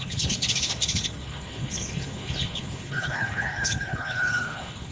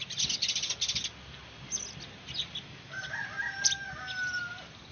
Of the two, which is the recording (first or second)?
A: second